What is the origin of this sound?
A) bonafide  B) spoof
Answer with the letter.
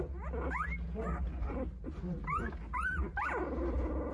A